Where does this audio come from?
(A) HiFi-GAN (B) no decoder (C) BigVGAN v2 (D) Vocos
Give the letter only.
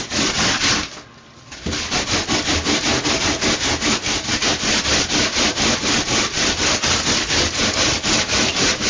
B